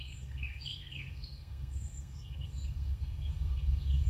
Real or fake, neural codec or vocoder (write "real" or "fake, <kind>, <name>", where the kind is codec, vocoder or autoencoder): fake, codec, SNAC